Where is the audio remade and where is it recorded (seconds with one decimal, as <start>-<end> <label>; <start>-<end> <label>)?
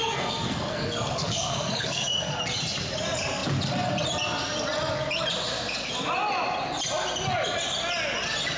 0.0-2.3 remade; 2.3-8.6 recorded